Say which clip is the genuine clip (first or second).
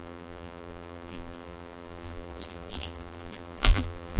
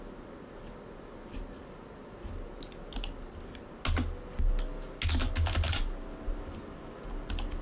second